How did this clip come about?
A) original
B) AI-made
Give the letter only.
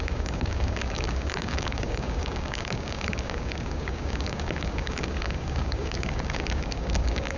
B